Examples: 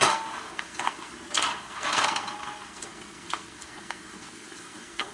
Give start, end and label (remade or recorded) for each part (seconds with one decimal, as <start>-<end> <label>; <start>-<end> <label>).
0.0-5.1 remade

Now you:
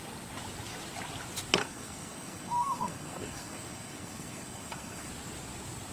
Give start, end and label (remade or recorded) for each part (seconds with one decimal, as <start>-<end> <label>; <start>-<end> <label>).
0.0-1.6 recorded; 1.6-5.1 remade; 5.1-5.9 recorded

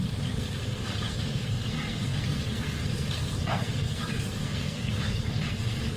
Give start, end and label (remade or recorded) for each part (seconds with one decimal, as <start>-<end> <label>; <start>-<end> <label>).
0.0-6.0 remade

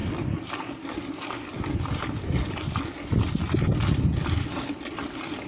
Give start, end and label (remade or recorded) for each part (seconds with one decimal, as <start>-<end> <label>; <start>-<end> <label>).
0.0-5.5 recorded

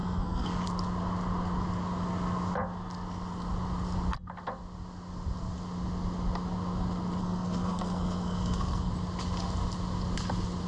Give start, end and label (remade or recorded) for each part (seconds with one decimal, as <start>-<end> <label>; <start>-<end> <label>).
0.0-0.6 remade; 0.6-7.2 recorded; 7.2-8.9 remade; 8.9-10.7 recorded

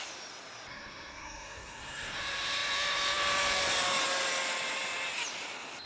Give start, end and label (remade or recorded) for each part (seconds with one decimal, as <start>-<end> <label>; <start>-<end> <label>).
0.0-0.7 recorded; 0.7-2.2 remade; 2.2-5.9 recorded